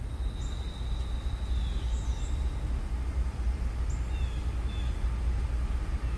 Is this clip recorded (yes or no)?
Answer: yes